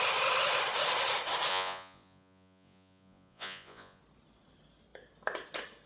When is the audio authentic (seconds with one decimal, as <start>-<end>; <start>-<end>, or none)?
0.0-1.5; 4.0-5.9